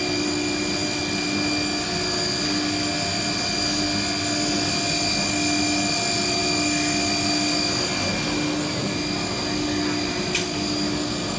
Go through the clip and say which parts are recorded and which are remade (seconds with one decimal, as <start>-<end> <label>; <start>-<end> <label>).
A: 0.0-11.4 recorded